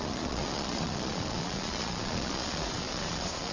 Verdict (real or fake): fake